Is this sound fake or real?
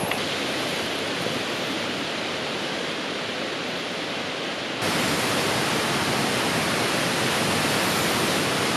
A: real